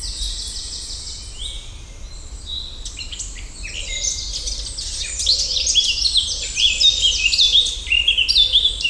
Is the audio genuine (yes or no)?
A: yes